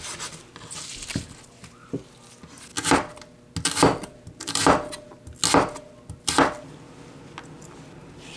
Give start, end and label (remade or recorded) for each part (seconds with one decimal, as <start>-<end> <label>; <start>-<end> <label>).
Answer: 0.0-8.4 recorded